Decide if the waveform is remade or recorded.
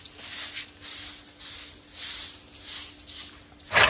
recorded